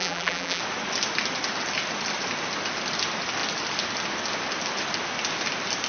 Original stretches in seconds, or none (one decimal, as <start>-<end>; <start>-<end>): 0.6-5.9